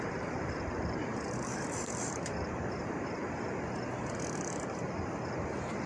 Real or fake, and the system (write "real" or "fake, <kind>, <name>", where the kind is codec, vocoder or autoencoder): fake, vocoder, BigVGAN v2